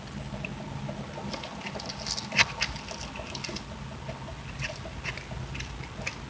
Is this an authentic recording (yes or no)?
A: yes